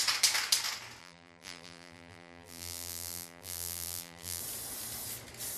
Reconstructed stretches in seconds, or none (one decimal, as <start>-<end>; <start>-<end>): 1.0-4.4